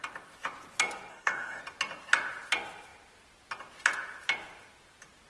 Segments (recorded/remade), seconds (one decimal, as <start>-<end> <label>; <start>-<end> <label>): 0.0-1.1 recorded; 1.1-1.6 remade; 1.6-5.3 recorded